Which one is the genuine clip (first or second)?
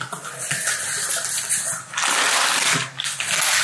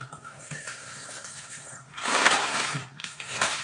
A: first